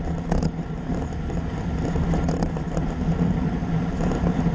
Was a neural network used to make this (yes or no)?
no